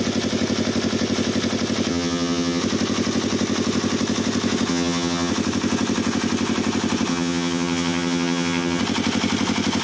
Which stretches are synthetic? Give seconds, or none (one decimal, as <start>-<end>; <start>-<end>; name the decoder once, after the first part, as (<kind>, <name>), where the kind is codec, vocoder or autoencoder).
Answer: 1.9-2.6 (vocoder, HiFi-GAN); 4.7-5.3; 7.1-8.8